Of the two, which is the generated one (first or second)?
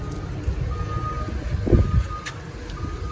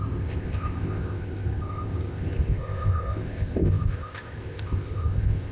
second